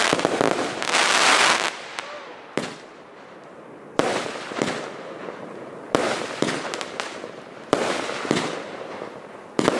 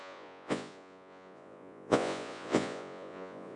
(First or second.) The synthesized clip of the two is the second